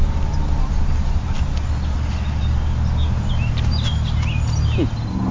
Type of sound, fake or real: real